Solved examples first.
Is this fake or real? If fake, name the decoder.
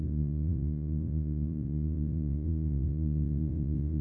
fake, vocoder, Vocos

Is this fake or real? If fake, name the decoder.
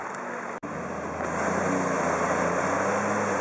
real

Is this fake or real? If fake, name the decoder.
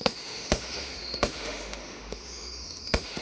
fake, autoencoder, DAC-VAE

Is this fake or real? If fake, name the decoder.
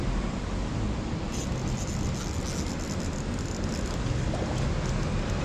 real